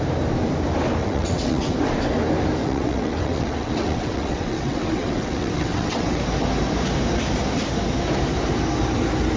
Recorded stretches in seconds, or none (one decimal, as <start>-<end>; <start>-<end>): 0.0-1.0; 1.7-2.6; 6.2-9.4